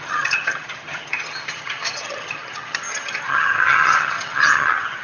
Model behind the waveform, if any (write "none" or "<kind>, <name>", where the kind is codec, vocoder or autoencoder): vocoder, HiFi-GAN